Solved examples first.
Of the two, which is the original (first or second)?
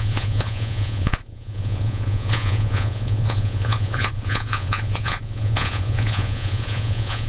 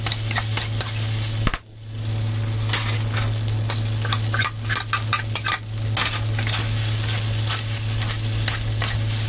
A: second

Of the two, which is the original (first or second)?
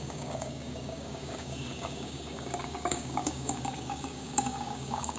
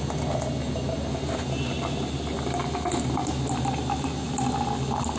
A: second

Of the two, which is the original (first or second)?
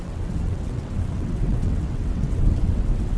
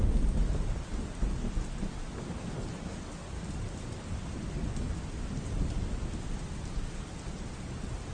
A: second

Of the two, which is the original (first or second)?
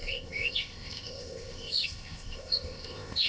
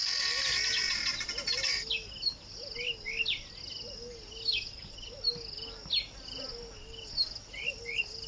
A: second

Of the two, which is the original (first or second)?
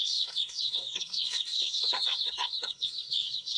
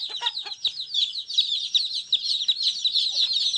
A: second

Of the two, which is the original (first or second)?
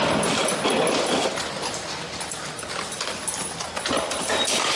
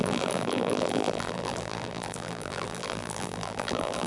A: first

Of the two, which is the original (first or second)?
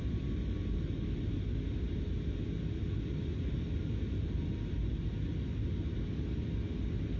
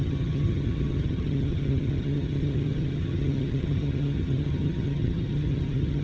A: first